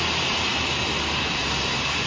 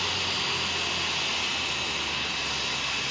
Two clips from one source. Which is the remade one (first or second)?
first